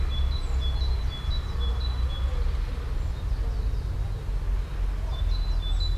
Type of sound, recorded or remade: recorded